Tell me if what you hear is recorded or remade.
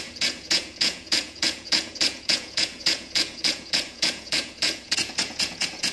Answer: remade